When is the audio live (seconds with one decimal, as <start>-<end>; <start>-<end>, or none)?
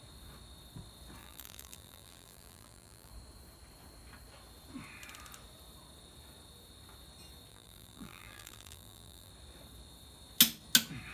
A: 0.0-1.2; 3.1-7.5; 9.3-11.1